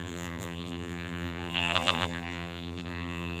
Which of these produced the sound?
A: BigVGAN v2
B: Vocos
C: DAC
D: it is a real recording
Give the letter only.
A